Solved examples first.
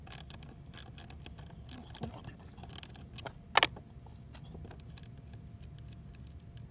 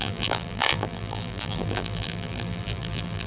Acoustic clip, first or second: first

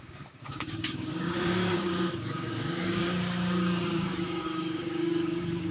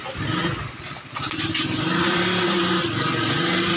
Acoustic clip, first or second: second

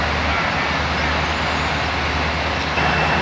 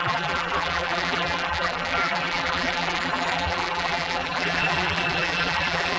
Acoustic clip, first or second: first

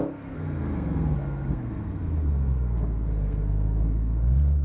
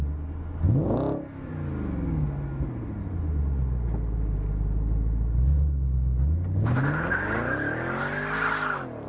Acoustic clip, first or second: second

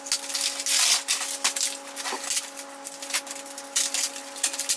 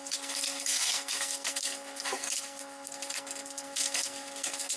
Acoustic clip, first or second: first